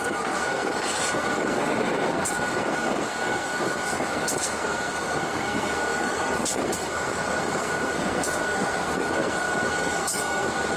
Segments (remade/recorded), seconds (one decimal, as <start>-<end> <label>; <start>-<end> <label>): 0.0-10.8 remade